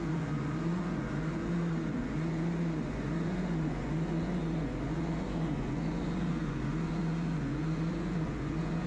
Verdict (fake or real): fake